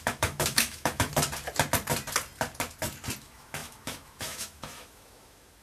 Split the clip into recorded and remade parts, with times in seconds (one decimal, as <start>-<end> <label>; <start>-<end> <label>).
0.0-1.1 remade; 1.1-3.2 recorded; 3.2-5.6 remade